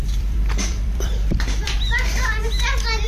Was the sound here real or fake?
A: fake